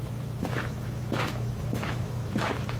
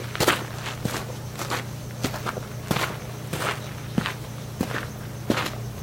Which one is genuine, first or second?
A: second